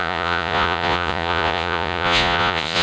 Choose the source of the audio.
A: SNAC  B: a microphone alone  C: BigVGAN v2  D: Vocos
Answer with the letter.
D